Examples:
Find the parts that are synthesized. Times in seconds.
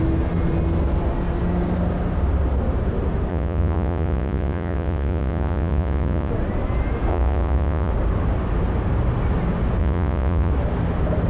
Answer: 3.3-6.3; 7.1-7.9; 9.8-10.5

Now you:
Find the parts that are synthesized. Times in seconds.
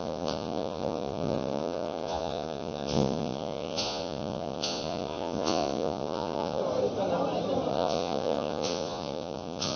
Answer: 0.0-6.6; 7.7-9.8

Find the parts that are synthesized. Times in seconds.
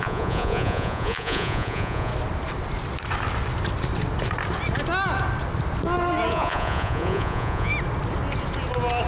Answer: 0.0-2.1; 6.3-7.7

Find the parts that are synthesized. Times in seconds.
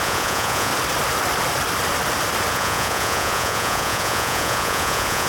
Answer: 0.0-0.7; 2.5-5.3